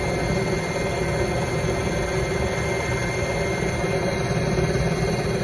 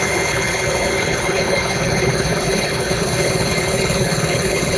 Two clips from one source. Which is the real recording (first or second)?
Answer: first